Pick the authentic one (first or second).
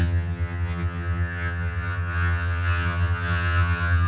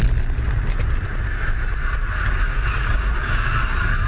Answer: second